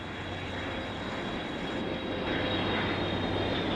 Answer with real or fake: real